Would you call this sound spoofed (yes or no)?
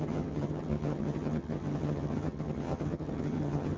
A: yes